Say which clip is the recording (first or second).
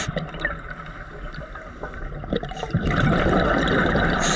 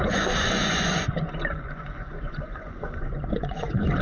first